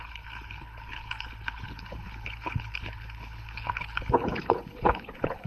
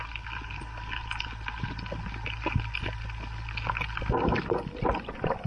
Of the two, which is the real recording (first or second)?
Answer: second